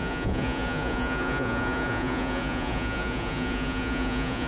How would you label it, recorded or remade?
remade